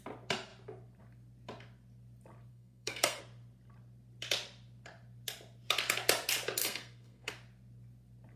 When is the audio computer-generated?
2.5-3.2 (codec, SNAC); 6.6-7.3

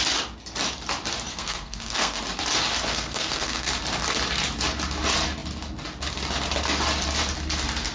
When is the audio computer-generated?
1.3-2.2 (codec, SNAC); 2.9-3.7

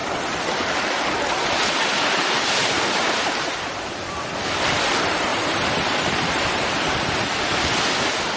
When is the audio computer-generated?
5.3-7.0 (vocoder, BigVGAN v2)

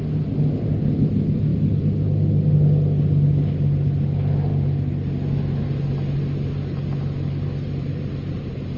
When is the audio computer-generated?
none

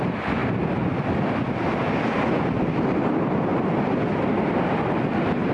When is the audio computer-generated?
none